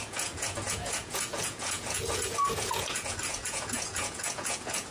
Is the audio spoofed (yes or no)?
yes